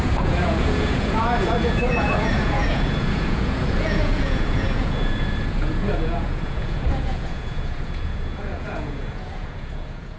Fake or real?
fake